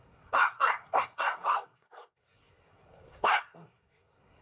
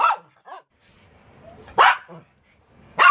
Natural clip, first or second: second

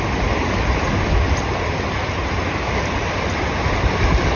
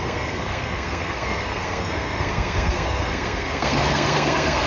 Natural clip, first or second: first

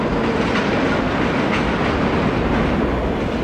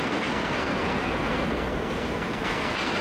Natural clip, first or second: first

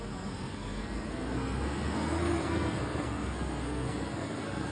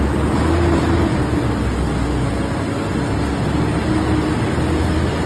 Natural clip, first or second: second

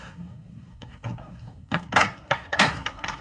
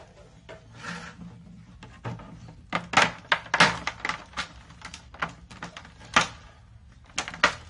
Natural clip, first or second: second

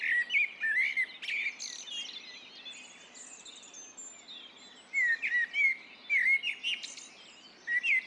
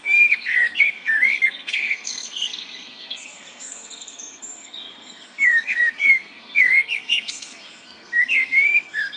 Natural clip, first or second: first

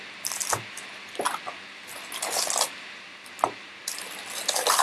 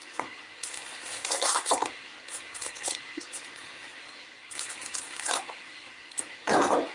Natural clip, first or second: first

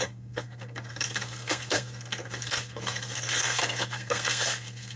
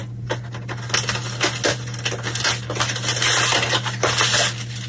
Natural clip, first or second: second